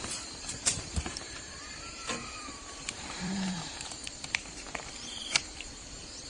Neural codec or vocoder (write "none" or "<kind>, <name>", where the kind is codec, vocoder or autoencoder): vocoder, BigVGAN v2